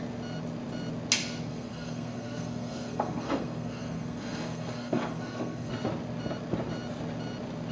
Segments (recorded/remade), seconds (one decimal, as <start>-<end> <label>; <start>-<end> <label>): 0.0-1.5 recorded; 1.5-5.7 remade; 5.7-7.7 recorded